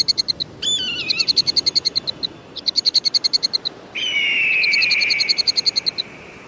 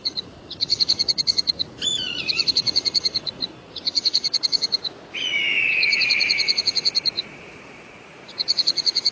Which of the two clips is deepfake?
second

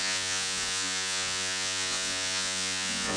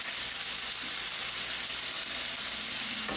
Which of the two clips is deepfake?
first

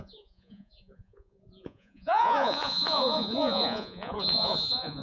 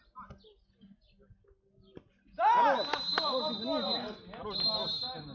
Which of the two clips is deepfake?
first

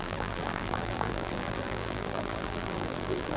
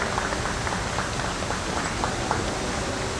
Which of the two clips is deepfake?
first